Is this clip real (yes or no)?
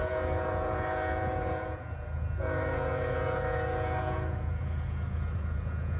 no